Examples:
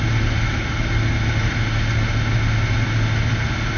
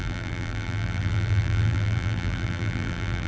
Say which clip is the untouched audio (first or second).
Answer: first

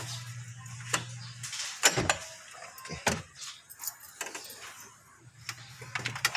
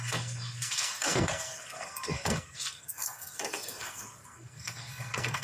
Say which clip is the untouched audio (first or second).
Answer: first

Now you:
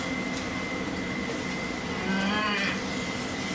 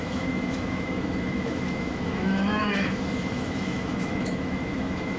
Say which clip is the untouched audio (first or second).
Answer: first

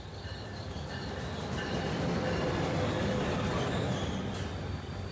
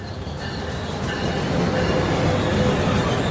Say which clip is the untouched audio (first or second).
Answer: second